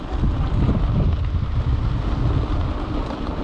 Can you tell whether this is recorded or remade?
recorded